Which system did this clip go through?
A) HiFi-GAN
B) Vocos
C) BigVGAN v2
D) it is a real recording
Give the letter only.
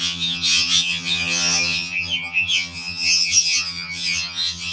A